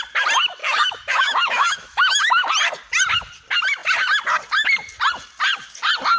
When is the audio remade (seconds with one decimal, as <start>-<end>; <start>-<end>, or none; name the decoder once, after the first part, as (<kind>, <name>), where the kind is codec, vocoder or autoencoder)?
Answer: 0.6-2.5 (autoencoder, DAC-VAE)